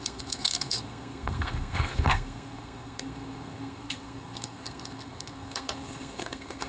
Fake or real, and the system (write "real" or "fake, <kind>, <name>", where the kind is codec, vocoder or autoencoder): fake, codec, SNAC